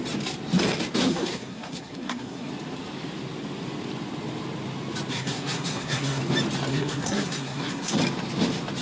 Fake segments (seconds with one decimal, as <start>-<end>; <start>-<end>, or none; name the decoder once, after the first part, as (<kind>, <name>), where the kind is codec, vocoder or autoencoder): 1.1-2.5 (codec, SNAC); 5.1-6.2; 6.7-8.0

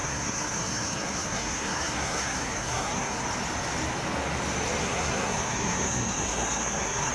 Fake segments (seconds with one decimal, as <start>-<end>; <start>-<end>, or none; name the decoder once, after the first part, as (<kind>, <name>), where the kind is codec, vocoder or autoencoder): 0.0-3.2 (codec, SNAC); 4.8-7.1

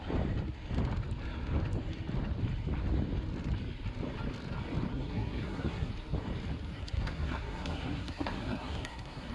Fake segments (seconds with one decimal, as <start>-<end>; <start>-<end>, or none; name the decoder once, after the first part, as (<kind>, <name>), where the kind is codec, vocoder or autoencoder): 4.9-5.9 (codec, SNAC); 6.8-9.3